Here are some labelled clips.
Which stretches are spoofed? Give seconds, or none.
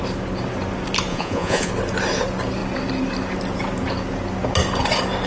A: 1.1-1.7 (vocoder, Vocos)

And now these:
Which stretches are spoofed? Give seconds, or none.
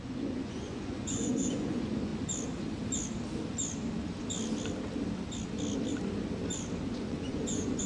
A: 0.0-2.1 (vocoder, Vocos); 6.8-7.9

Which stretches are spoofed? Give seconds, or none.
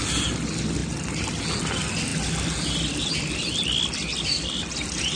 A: none